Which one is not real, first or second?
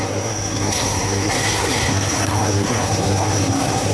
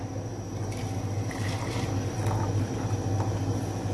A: first